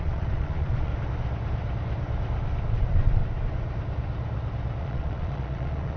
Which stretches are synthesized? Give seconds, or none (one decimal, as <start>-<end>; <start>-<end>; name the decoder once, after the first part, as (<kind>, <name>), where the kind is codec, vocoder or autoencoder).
0.0-0.9 (vocoder, Vocos); 2.7-3.2; 4.8-6.0